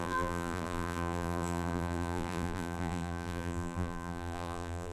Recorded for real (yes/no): no